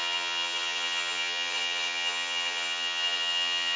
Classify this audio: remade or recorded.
remade